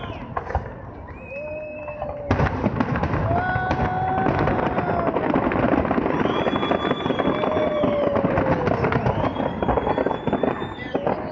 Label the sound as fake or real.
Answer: real